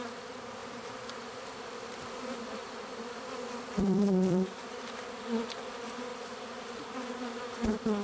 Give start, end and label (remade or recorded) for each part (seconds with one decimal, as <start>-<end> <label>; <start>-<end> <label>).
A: 0.0-0.6 recorded; 0.6-4.8 remade; 4.8-6.1 recorded; 6.1-6.8 remade; 6.8-8.0 recorded